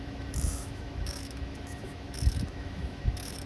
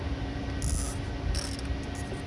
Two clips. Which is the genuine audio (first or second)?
second